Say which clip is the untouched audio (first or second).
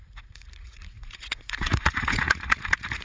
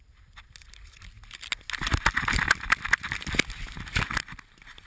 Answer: second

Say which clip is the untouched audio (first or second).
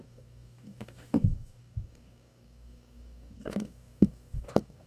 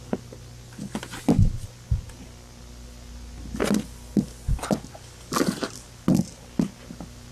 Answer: second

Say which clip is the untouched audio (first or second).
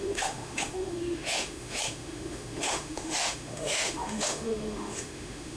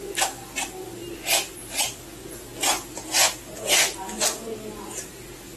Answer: second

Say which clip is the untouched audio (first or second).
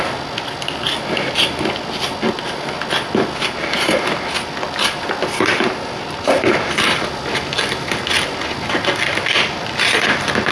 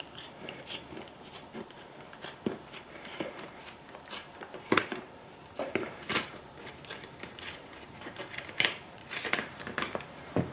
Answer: first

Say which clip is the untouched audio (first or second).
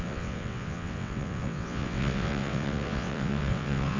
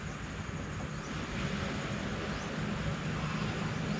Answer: second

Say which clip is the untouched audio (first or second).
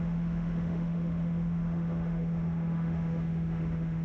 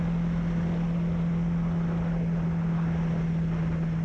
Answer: second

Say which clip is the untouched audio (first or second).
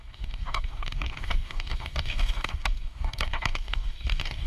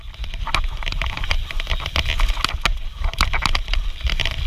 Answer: second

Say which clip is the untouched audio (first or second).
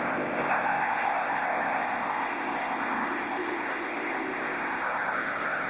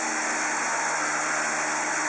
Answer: second